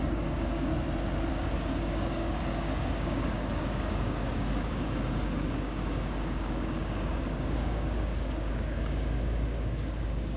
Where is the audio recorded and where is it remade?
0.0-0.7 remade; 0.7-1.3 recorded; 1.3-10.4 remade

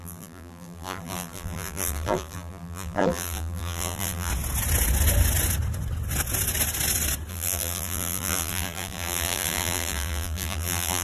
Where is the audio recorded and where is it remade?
0.0-4.3 remade; 4.3-7.3 recorded; 7.3-11.0 remade

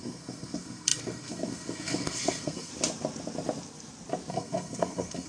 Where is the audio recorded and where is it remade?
0.0-2.7 remade; 2.7-4.3 recorded; 4.3-5.3 remade

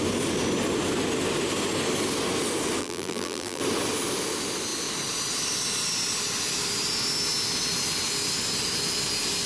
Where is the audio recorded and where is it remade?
0.0-2.8 recorded; 2.8-3.6 remade; 3.6-9.5 recorded

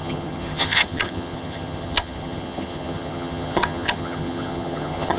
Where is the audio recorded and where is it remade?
0.0-5.2 remade

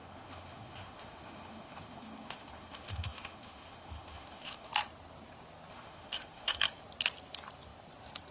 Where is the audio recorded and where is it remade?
0.0-4.7 remade; 4.7-5.7 recorded; 5.7-6.6 remade; 6.6-8.3 recorded

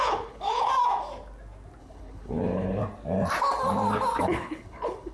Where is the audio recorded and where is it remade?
0.0-0.7 remade; 0.7-1.8 recorded; 1.8-2.8 remade; 2.8-4.2 recorded; 4.2-5.1 remade